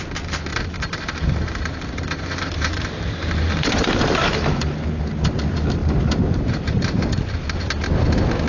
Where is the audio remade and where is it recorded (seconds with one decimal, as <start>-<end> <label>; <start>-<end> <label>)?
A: 0.0-0.5 recorded; 0.5-5.0 remade; 5.0-5.8 recorded; 5.8-7.1 remade; 7.1-8.5 recorded